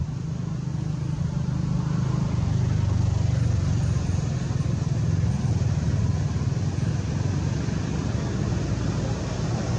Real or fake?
real